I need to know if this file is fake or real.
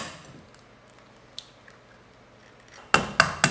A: real